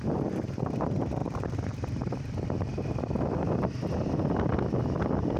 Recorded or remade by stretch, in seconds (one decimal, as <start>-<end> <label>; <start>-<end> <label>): 0.0-1.2 recorded; 1.2-3.5 remade; 3.5-5.4 recorded